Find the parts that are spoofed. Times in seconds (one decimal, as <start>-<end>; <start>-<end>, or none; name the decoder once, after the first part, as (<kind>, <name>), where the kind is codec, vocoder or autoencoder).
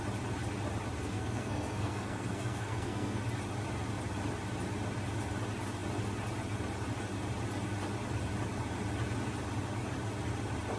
1.0-3.2 (codec, SNAC)